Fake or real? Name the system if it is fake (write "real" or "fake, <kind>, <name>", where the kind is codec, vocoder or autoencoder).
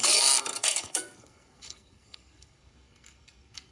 fake, codec, SNAC